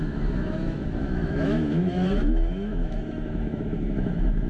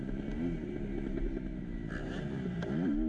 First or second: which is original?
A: second